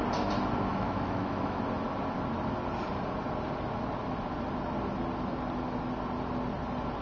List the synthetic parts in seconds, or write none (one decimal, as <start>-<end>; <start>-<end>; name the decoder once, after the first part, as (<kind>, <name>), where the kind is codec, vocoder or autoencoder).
0.7-1.6 (autoencoder, DAC-VAE)